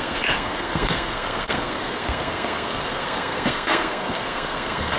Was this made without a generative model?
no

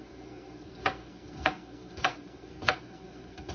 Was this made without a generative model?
no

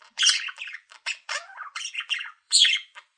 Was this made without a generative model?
no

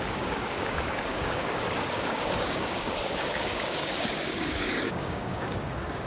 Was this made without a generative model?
no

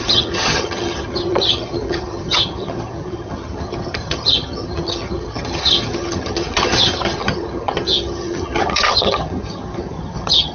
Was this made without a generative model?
no